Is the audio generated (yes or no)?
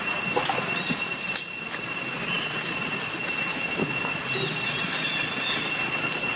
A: no